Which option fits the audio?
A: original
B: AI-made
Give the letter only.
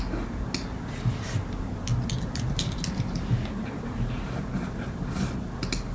A